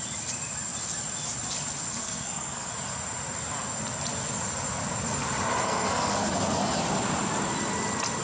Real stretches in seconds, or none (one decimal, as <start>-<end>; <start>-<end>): 0.0-2.0; 2.7-5.6; 6.4-8.2